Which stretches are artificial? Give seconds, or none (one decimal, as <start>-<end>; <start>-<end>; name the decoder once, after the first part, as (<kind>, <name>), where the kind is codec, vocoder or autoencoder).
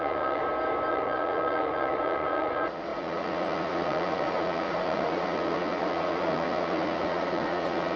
0.0-0.4 (vocoder, Vocos); 0.9-8.0